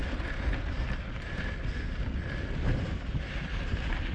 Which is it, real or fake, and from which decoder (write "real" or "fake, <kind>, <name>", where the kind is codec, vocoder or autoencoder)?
real